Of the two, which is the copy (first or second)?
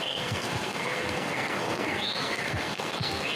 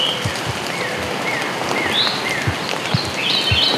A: first